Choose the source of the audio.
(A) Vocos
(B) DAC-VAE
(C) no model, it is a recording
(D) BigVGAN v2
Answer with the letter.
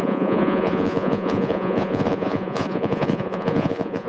A